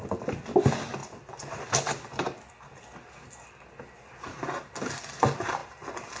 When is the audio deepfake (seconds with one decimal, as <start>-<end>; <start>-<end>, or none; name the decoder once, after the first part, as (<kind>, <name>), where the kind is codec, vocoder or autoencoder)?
none